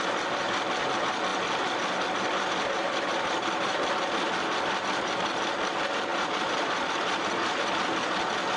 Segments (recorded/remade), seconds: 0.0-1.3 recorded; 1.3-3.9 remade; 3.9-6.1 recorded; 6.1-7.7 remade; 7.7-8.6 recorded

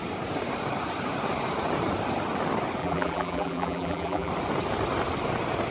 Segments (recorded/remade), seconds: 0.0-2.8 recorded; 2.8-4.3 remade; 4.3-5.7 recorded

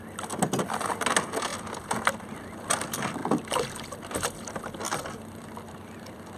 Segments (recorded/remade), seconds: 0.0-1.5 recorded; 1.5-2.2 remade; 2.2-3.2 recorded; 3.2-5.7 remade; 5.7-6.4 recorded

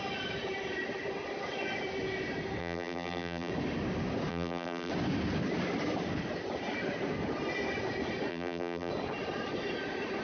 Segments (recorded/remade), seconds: 0.0-2.6 recorded; 2.6-3.5 remade; 3.5-4.3 recorded; 4.3-4.9 remade; 4.9-8.3 recorded; 8.3-8.9 remade; 8.9-10.2 recorded